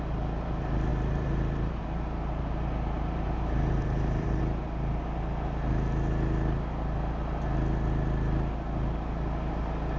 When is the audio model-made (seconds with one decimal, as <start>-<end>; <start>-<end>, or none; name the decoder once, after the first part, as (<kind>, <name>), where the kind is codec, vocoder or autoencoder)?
0.9-4.4 (vocoder, BigVGAN v2)

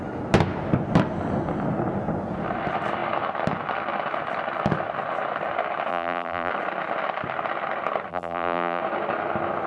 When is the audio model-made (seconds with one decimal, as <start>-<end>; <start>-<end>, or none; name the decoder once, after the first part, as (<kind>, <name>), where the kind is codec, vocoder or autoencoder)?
5.9-6.5 (vocoder, BigVGAN v2); 8.1-8.8

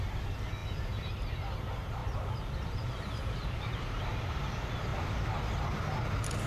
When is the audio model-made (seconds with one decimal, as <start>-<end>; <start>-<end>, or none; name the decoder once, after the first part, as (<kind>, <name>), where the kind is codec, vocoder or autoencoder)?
2.0-4.0 (vocoder, BigVGAN v2)

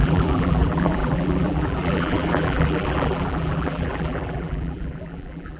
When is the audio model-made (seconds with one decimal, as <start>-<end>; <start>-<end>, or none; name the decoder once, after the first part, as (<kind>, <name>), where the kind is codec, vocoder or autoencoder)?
0.0-5.6 (vocoder, BigVGAN v2)

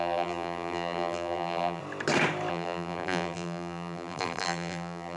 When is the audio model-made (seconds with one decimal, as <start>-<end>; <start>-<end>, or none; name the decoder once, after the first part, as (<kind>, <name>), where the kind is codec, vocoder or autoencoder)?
0.0-1.8 (vocoder, BigVGAN v2); 2.5-5.2

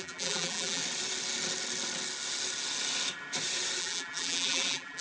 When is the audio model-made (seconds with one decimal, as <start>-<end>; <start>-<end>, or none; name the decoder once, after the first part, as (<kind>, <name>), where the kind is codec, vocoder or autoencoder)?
0.0-0.8 (vocoder, BigVGAN v2); 3.8-5.0